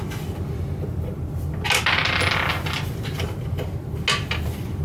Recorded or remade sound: recorded